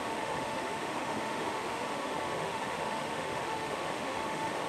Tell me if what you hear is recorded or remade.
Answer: remade